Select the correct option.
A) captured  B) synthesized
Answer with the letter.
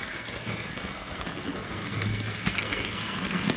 B